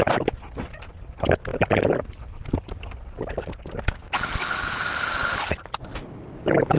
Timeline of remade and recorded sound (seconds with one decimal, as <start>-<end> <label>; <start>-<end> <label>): 0.0-6.8 recorded